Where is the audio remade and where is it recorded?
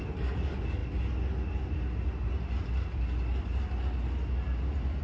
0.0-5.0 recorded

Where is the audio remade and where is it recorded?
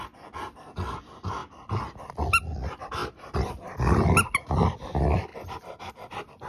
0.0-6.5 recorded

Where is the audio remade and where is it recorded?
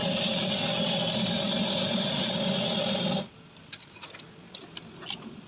0.0-5.5 recorded